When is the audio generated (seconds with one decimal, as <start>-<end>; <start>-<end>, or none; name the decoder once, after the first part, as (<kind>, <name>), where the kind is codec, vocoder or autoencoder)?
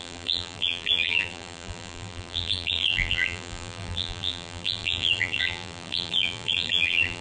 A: 0.0-7.2 (vocoder, BigVGAN v2)